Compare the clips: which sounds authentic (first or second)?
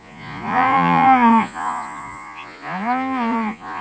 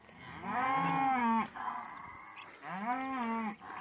second